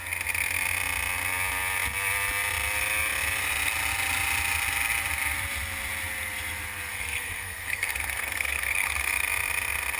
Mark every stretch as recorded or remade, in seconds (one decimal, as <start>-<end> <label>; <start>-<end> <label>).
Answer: 0.0-6.9 recorded; 6.9-9.0 remade; 9.0-10.0 recorded